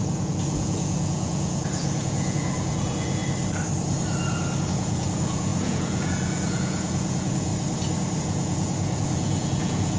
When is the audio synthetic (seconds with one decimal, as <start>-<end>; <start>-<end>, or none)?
0.0-3.2; 4.7-7.5; 8.2-10.0